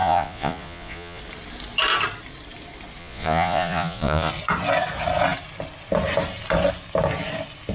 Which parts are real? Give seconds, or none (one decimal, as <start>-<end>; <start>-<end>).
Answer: 1.2-3.0; 4.3-7.7